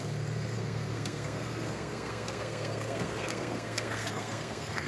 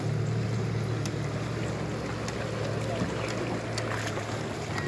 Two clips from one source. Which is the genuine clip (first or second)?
second